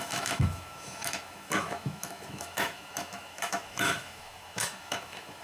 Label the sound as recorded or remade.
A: remade